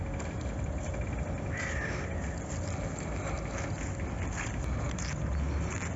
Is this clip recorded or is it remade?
recorded